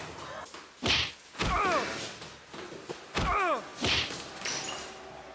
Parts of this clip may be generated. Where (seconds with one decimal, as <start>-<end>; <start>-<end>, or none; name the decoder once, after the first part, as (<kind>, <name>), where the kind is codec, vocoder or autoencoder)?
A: 1.4-2.6 (vocoder, BigVGAN v2); 3.7-4.7